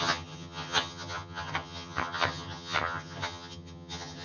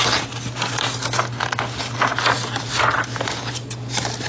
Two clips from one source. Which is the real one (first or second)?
second